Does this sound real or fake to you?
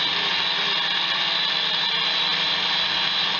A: real